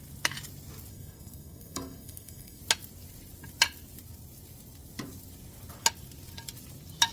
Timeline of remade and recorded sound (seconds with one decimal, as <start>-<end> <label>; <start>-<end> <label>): 0.0-0.9 recorded; 0.9-2.6 remade; 2.6-7.1 recorded